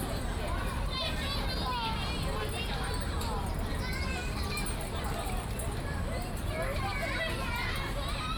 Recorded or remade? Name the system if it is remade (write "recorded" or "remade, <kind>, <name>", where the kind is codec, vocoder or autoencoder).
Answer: recorded